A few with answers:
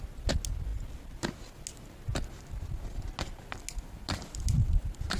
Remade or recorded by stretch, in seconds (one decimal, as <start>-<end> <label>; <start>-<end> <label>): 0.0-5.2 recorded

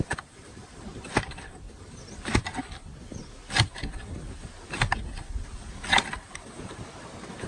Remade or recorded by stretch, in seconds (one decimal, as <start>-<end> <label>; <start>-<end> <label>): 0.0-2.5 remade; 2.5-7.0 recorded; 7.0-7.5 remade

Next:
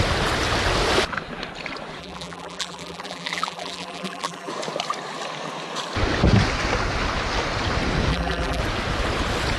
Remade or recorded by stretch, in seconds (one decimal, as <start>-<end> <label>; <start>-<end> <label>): 0.0-2.0 recorded; 2.0-4.5 remade; 4.5-8.1 recorded; 8.1-8.6 remade; 8.6-9.6 recorded

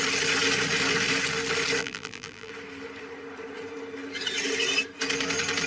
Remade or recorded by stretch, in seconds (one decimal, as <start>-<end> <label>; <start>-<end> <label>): 0.0-1.8 recorded; 1.8-2.5 remade; 2.5-5.7 recorded

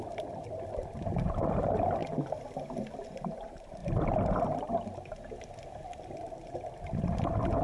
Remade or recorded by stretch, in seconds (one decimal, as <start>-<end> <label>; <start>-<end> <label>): 0.0-2.0 recorded; 2.0-3.3 remade; 3.3-3.8 recorded; 3.8-4.7 remade; 4.7-7.6 recorded